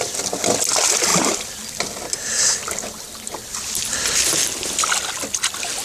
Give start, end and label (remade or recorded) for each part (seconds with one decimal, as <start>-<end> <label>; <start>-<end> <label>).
0.0-5.8 recorded